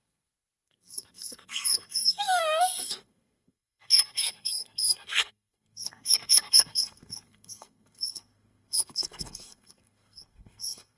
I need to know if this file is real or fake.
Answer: fake